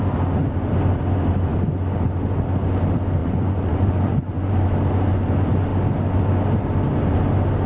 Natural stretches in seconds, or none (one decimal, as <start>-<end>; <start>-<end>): 0.0-3.2; 4.5-7.7